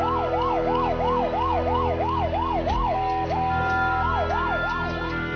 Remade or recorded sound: remade